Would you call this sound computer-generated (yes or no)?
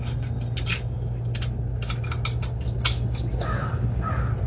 no